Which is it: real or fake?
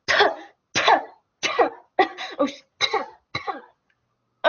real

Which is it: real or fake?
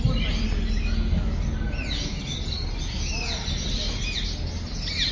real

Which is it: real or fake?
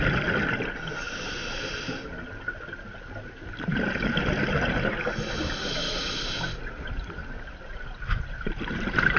real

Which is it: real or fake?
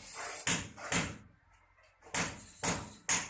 real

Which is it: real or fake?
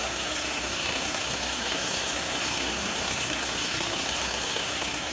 fake